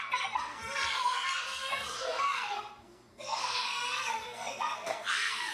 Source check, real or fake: fake